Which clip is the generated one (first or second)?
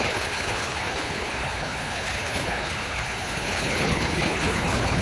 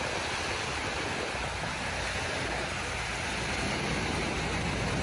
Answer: first